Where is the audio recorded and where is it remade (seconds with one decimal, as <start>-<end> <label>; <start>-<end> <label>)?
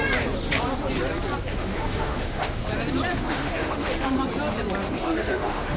0.0-1.5 recorded; 1.5-2.6 remade; 2.6-3.1 recorded; 3.1-4.1 remade; 4.1-4.8 recorded; 4.8-5.8 remade